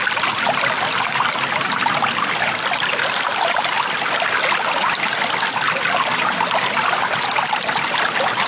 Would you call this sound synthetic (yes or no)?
no